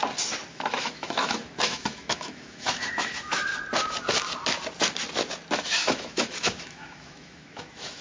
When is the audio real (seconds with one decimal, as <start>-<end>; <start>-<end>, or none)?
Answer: 0.0-0.5; 3.5-5.5